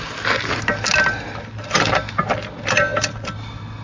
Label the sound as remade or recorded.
recorded